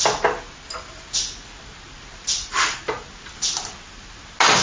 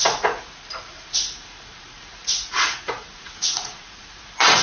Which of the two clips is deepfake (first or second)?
second